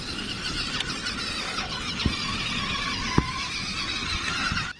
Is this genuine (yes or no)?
yes